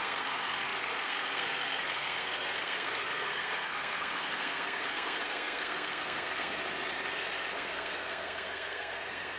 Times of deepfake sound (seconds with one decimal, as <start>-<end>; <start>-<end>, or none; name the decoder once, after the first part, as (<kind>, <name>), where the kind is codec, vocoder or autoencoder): 0.0-6.6 (codec, SNAC); 7.5-9.4